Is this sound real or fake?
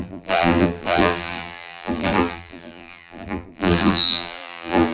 fake